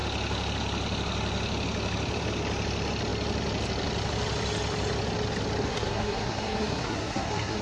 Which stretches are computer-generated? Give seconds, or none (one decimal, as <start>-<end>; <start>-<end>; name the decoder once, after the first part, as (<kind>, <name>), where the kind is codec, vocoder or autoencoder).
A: 5.7-7.6 (codec, SNAC)